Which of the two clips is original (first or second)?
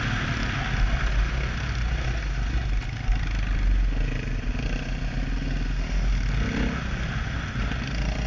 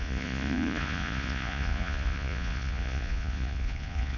first